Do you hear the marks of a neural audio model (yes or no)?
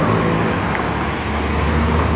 no